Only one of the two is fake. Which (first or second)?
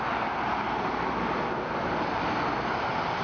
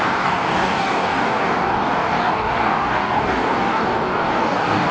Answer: second